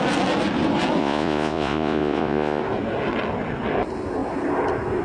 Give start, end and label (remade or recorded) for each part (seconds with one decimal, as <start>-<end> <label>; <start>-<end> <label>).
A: 0.0-1.0 recorded; 1.0-2.6 remade; 2.6-5.0 recorded